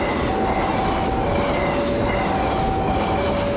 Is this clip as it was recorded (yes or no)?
yes